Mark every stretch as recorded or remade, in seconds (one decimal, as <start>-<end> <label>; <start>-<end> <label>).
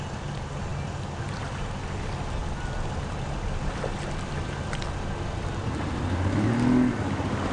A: 0.0-7.5 recorded